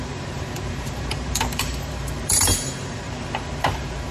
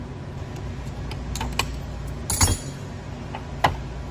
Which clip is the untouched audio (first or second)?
second